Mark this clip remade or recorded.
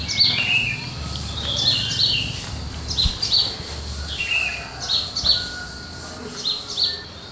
recorded